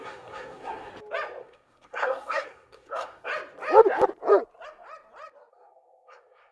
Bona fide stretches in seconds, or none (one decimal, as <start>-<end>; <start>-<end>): 0.9-1.4; 3.3-5.5